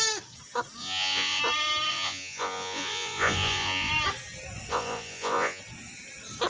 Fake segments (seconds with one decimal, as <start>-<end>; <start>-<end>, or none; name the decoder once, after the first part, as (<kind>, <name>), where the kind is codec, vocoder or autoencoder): 0.8-1.4 (vocoder, Vocos); 1.9-3.9; 4.7-5.6